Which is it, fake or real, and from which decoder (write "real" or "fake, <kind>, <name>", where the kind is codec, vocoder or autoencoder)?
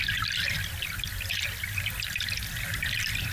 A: real